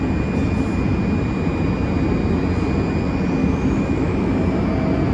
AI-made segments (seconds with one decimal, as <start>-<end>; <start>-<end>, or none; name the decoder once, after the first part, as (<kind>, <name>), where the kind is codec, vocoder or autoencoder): 3.4-4.3 (autoencoder, DAC-VAE)